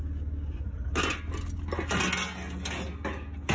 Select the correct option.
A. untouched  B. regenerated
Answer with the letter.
A